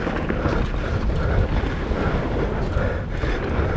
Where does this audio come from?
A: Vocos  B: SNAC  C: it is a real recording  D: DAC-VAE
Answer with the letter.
C